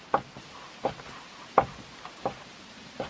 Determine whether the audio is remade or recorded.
remade